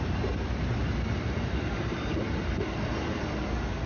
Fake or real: fake